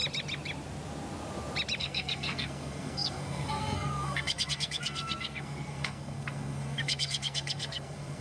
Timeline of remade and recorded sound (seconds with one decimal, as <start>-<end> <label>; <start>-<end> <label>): 0.0-1.8 recorded; 1.8-8.2 remade